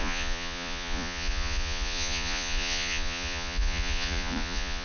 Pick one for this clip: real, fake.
fake